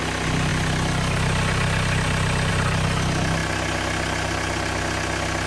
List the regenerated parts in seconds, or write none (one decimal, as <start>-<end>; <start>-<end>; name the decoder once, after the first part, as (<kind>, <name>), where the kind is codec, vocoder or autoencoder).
none